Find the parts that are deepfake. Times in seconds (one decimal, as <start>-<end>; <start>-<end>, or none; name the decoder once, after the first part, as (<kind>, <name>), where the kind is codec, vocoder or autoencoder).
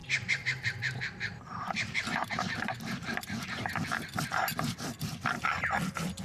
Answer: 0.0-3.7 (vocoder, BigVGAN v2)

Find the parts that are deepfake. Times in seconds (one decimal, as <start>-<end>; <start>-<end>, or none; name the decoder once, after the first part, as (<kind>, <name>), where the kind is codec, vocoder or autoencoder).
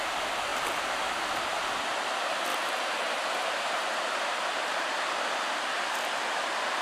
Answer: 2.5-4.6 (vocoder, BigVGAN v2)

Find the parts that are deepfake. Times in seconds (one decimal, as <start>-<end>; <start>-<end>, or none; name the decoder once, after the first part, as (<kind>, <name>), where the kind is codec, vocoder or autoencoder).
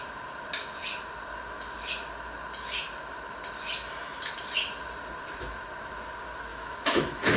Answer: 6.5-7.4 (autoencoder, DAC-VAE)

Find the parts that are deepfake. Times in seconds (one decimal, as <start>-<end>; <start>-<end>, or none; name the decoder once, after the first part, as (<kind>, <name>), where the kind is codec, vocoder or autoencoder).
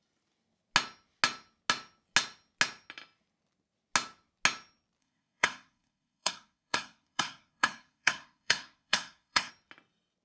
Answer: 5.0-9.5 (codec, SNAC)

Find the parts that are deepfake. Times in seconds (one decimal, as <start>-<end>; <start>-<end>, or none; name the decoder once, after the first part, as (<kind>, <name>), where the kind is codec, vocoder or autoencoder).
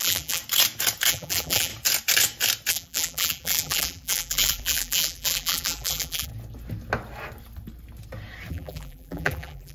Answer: 0.0-0.4 (vocoder, BigVGAN v2); 1.1-1.7; 2.7-6.3; 8.5-9.7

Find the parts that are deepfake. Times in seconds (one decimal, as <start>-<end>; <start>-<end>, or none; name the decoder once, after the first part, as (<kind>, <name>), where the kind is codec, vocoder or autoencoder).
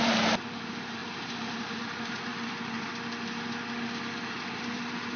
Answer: 0.0-2.3 (vocoder, BigVGAN v2); 4.6-5.2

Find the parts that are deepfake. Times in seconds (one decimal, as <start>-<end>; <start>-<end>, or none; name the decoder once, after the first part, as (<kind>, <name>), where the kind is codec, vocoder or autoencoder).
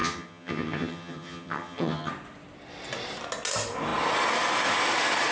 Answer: 0.0-2.1 (vocoder, HiFi-GAN)